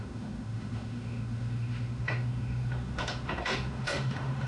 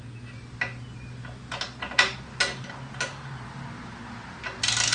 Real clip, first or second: second